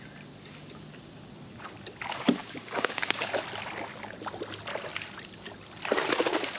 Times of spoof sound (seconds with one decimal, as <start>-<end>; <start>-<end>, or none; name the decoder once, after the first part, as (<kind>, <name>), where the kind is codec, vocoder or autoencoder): 2.4-3.3 (codec, DAC)